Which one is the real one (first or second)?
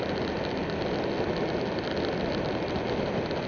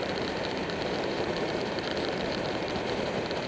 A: first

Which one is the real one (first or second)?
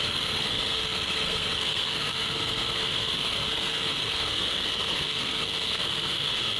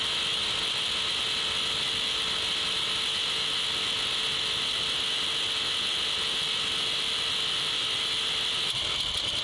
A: second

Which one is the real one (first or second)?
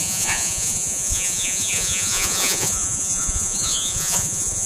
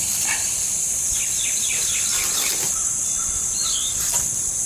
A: second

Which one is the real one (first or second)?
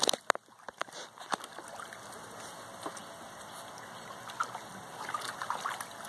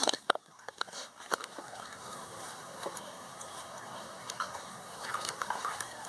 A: first